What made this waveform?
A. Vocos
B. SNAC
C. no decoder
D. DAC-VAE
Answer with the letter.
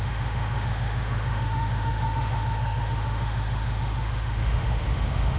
D